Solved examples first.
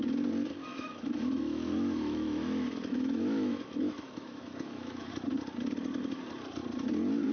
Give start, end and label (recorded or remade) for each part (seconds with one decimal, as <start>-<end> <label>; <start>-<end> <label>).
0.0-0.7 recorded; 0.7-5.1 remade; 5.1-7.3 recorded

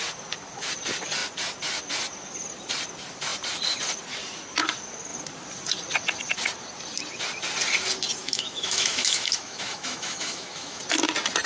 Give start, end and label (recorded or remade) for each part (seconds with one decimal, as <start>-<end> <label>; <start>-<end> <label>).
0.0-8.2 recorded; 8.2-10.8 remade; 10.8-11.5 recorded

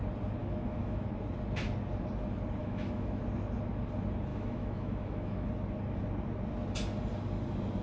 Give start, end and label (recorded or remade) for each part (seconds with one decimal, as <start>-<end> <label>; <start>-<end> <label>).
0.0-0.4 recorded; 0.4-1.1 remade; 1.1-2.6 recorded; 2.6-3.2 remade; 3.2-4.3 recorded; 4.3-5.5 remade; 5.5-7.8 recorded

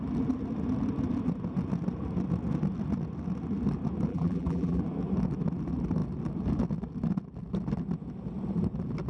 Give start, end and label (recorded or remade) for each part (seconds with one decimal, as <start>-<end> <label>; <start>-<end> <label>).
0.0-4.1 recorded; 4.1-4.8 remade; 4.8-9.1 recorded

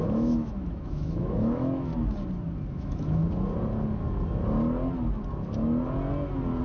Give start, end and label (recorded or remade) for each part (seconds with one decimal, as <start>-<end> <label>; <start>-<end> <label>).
0.0-1.9 remade; 1.9-2.7 recorded; 2.7-3.2 remade; 3.2-6.6 recorded

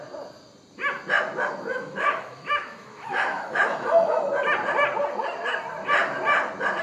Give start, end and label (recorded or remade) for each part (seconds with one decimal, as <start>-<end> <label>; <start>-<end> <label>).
0.0-1.7 recorded; 1.7-4.3 remade; 4.3-6.8 recorded